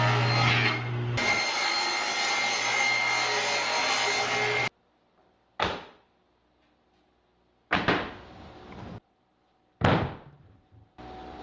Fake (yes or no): no